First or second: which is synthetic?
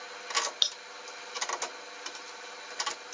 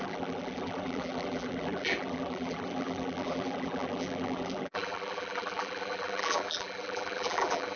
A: second